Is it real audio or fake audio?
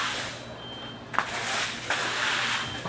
real